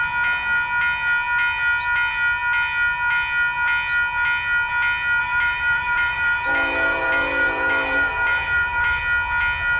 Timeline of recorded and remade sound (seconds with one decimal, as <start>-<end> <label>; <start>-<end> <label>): 0.0-5.2 recorded; 5.2-9.0 remade; 9.0-9.8 recorded